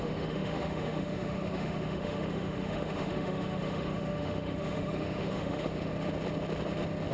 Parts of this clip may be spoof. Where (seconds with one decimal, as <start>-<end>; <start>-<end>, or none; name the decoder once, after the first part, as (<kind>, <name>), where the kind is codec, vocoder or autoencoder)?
0.0-5.9 (autoencoder, DAC-VAE)